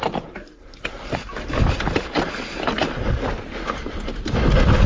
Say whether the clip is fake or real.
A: real